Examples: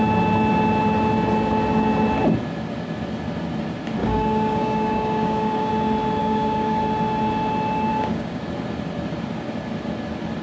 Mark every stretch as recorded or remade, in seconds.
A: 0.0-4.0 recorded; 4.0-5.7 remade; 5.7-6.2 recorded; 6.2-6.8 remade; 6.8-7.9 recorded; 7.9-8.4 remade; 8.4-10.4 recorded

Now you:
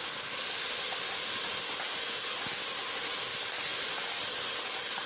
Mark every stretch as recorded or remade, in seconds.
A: 0.0-5.1 recorded

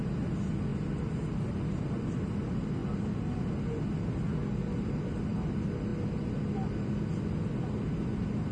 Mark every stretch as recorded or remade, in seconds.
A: 0.0-8.5 recorded

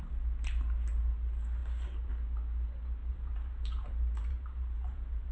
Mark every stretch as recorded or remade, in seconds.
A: 0.0-3.0 recorded; 3.0-5.3 remade

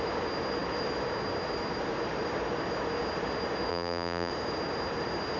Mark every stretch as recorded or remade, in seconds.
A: 0.0-3.7 recorded; 3.7-4.3 remade; 4.3-5.4 recorded

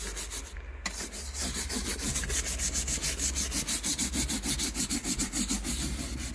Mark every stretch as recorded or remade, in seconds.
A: 0.0-6.3 recorded